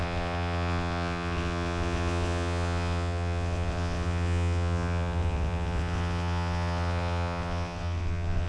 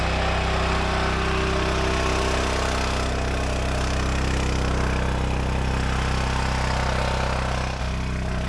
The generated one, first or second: first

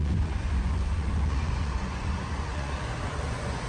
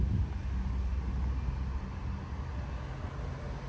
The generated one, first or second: first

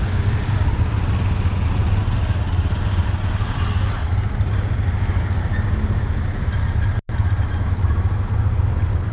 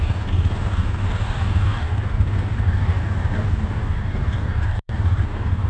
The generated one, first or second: second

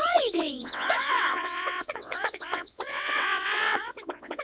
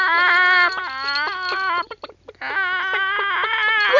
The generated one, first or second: first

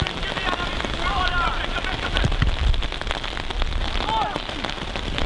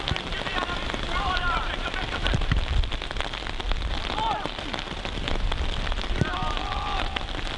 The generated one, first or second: second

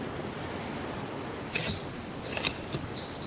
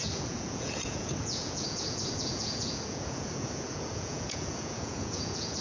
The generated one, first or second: second